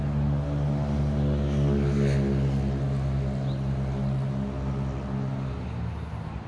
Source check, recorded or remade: recorded